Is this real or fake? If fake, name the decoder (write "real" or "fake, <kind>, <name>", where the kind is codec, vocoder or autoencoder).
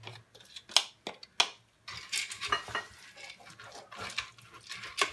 real